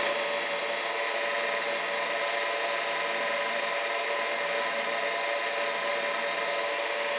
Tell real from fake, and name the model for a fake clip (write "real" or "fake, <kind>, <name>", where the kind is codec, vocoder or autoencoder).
real